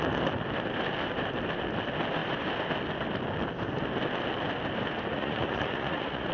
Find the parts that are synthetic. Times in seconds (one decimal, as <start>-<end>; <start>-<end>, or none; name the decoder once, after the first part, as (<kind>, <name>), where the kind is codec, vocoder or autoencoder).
5.1-6.3 (vocoder, Vocos)

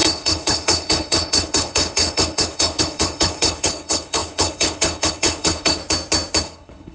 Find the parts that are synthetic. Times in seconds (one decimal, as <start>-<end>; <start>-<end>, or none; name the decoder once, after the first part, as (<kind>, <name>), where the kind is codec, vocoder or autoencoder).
0.0-5.8 (codec, HILCodec); 6.4-6.9

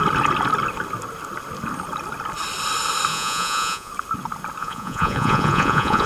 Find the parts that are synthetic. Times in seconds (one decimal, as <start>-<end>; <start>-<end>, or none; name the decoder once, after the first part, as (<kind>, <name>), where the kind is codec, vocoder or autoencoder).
3.1-3.9 (vocoder, Vocos); 4.6-6.1

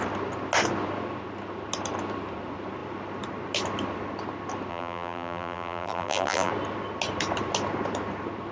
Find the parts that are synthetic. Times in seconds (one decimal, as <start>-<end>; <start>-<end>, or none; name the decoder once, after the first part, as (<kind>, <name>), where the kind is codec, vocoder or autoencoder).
4.7-6.5 (vocoder, BigVGAN v2)

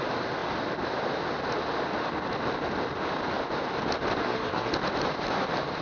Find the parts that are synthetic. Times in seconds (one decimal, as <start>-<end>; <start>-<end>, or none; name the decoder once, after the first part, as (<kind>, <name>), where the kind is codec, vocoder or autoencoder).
4.2-4.7 (codec, SNAC)

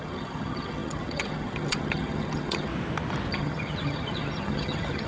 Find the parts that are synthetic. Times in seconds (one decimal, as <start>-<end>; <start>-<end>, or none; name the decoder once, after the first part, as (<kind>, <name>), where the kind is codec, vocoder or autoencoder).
0.0-2.7 (vocoder, HiFi-GAN); 3.3-5.1

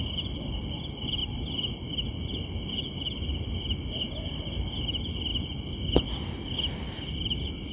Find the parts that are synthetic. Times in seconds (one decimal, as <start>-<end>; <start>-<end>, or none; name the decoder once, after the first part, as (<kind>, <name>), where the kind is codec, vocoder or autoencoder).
none